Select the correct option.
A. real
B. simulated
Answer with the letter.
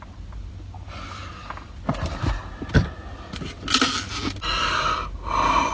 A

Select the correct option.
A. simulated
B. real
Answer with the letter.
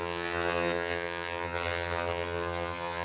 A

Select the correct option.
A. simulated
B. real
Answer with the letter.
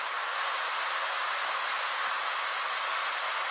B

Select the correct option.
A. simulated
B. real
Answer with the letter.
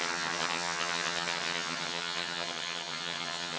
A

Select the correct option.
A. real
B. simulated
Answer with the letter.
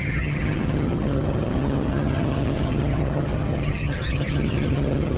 B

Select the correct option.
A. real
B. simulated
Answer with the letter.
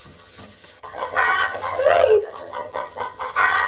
B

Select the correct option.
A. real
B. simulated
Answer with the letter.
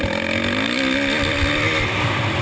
A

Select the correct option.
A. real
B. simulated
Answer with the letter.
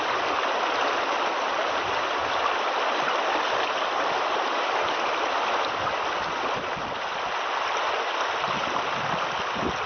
A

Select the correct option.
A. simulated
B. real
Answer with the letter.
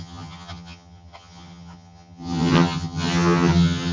A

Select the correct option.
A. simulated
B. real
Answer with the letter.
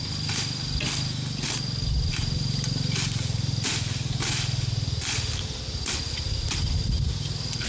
B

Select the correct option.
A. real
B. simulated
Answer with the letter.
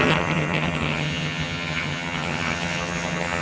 B